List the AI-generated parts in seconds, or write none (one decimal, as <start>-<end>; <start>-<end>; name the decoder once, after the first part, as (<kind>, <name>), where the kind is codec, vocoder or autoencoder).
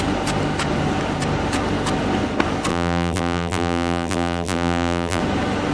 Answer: 2.7-5.2 (vocoder, BigVGAN v2)